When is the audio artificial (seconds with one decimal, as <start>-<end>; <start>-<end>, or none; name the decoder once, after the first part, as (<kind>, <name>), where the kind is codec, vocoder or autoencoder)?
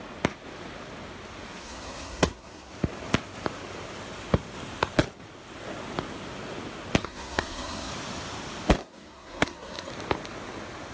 1.6-2.7 (codec, SNAC); 7.0-7.9; 8.8-9.9